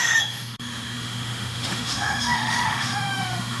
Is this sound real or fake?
fake